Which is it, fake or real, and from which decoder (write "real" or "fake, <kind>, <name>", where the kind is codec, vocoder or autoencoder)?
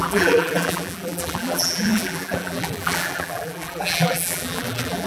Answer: fake, vocoder, BigVGAN v2